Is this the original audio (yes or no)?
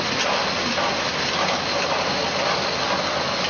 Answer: yes